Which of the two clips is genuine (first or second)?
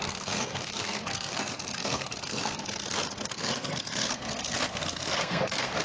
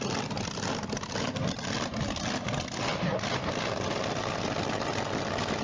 second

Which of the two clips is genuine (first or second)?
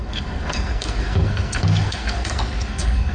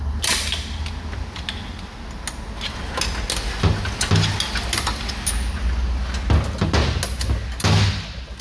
second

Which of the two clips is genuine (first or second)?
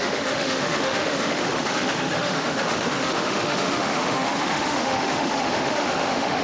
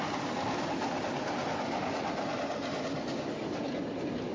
second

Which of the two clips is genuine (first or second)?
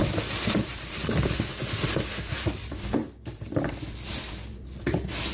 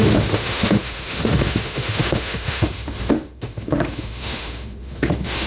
first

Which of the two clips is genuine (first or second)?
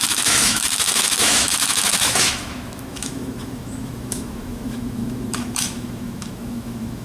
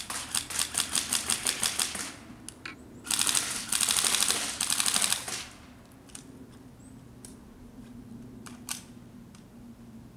second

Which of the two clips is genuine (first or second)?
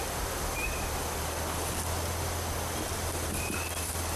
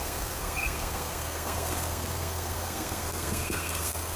first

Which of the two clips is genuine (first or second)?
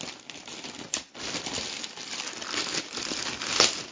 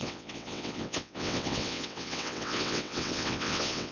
first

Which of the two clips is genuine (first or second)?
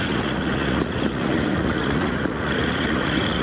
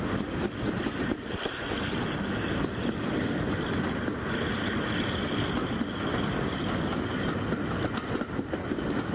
second